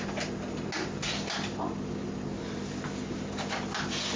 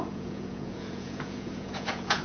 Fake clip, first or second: second